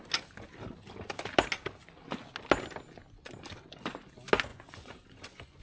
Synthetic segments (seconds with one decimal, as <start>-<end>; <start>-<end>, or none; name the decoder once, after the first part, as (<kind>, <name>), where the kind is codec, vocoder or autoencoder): 4.5-5.6 (vocoder, Vocos)